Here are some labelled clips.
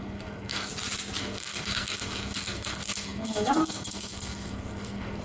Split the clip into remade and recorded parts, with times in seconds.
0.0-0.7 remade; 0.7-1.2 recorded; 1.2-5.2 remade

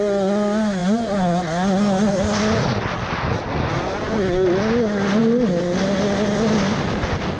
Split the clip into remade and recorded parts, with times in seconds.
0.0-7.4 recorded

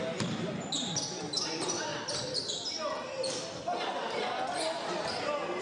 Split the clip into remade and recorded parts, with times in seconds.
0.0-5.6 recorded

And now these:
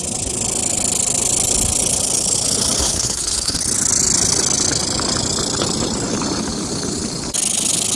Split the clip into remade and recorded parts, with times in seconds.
0.0-2.8 recorded; 2.8-3.6 remade; 3.6-8.0 recorded

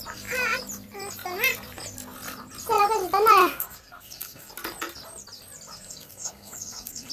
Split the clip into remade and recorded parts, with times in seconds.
0.0-3.4 recorded; 3.4-4.5 remade; 4.5-5.7 recorded; 5.7-7.1 remade